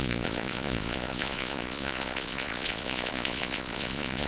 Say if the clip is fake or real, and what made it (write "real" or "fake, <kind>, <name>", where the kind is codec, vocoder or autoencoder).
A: fake, vocoder, Vocos